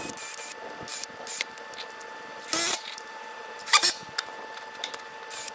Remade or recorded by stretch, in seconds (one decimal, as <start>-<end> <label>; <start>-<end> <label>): 0.0-2.7 recorded; 2.7-4.1 remade; 4.1-5.5 recorded